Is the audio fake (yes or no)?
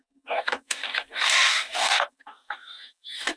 yes